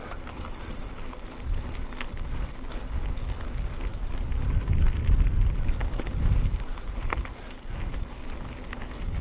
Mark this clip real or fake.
real